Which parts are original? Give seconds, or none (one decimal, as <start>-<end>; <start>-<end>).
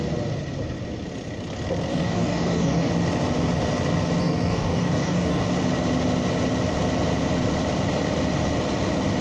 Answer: 0.0-1.9; 2.9-4.2; 5.4-9.2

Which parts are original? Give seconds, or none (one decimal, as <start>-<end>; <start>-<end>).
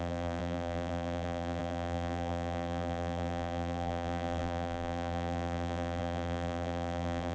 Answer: none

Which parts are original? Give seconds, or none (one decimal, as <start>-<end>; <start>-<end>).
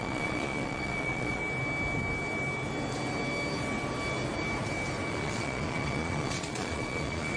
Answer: 1.4-5.1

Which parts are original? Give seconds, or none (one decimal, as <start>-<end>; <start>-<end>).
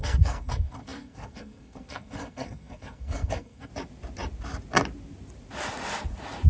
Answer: 3.7-6.5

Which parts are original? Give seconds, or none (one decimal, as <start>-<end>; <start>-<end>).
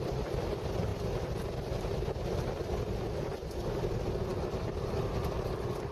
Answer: 0.0-5.9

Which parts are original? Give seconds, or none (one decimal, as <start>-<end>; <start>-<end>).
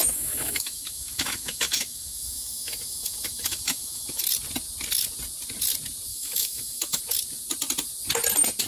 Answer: 4.2-6.1; 7.0-8.7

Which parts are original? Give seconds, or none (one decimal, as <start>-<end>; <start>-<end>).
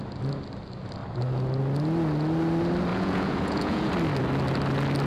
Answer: 0.0-2.9; 3.9-5.1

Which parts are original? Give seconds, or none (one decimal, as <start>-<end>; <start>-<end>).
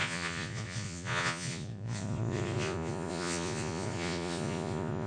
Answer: none